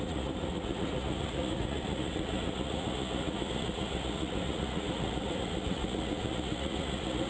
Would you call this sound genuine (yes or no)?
no